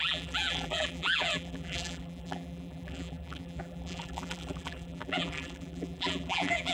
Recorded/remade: remade